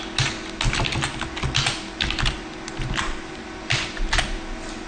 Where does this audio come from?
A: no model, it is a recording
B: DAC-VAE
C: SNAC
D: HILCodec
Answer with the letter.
A